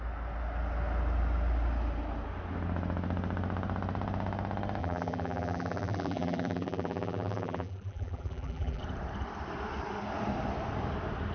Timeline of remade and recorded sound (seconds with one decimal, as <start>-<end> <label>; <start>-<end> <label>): 0.0-4.8 recorded; 4.8-8.8 remade; 8.8-11.3 recorded